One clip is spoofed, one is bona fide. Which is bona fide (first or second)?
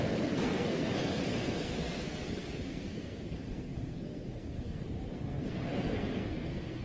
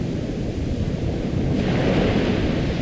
second